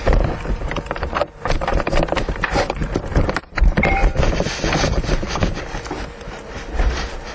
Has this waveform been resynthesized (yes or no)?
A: yes